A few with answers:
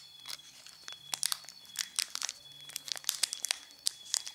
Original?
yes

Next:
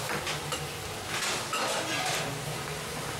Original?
yes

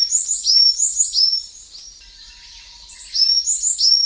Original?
no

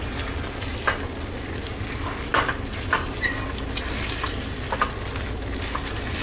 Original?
yes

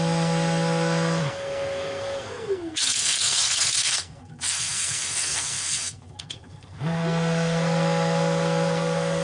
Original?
no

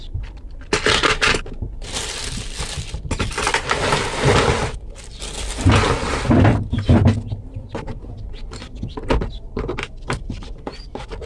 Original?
yes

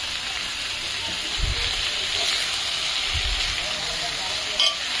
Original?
yes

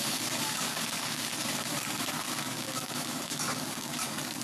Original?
no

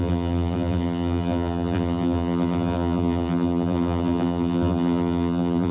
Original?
no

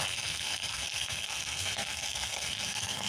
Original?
no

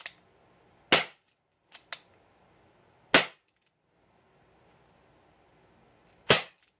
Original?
yes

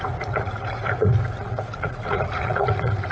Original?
no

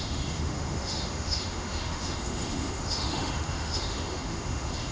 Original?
no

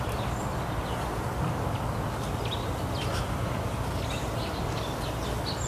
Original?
yes